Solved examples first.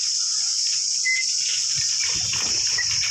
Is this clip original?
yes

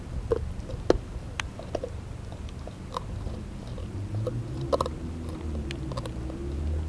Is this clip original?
yes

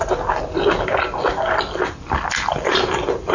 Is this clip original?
yes